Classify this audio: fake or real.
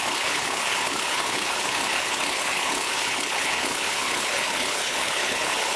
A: fake